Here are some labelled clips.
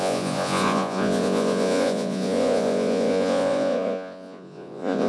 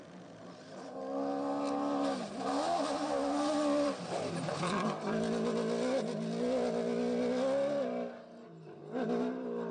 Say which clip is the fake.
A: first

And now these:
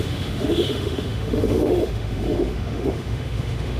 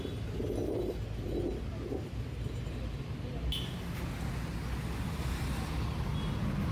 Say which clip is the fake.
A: first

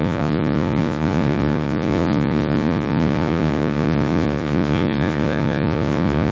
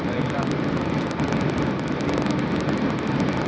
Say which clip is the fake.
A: first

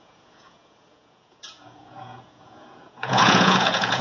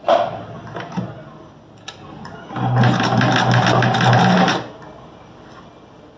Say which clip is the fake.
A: first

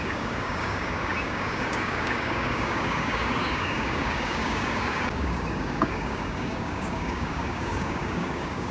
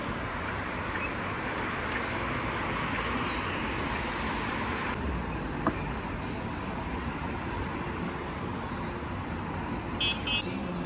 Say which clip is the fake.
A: first